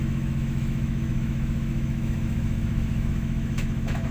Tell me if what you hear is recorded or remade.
remade